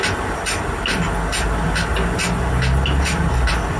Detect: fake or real real